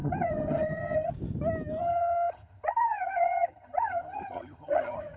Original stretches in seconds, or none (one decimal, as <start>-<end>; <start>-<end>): 1.1-1.8